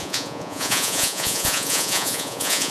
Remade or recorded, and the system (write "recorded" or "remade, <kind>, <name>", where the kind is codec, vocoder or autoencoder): remade, vocoder, Vocos